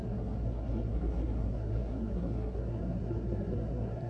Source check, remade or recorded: remade